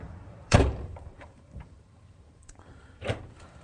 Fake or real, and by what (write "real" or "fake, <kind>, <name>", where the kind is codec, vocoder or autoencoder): fake, vocoder, BigVGAN v2